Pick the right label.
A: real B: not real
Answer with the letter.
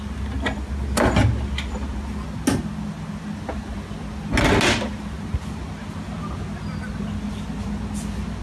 A